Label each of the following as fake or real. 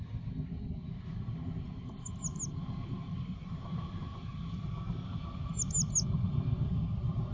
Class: real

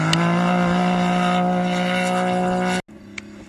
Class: real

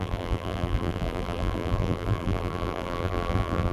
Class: fake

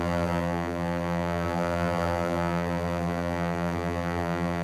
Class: fake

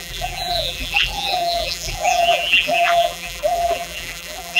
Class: fake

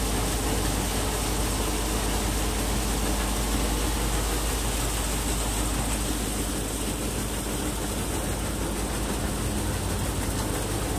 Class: real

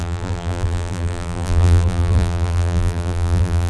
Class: fake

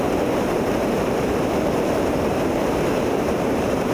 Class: fake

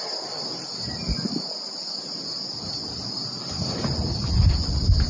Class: real